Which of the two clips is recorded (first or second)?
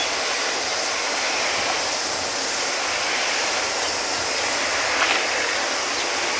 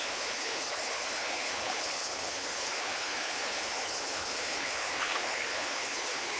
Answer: first